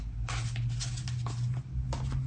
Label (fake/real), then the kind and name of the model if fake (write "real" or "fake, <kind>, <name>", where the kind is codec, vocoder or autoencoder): real